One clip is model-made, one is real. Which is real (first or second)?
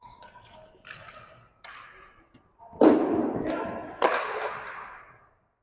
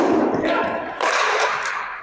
first